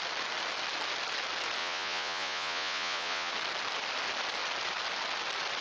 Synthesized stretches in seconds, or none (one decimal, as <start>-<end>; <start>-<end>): 1.6-3.3